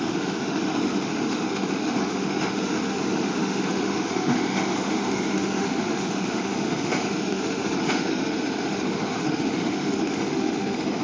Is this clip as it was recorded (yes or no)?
no